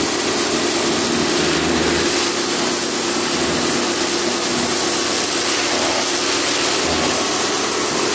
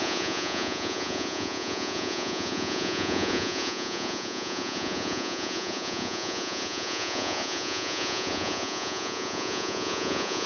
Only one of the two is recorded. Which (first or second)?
first